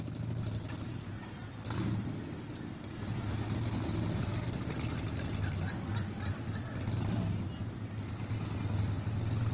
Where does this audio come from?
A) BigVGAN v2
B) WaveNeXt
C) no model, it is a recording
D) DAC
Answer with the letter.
C